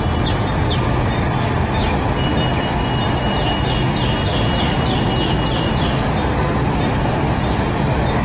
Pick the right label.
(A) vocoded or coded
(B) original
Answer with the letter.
B